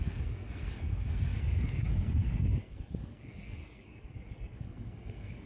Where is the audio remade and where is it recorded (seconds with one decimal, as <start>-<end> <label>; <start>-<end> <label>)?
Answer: 0.0-5.5 remade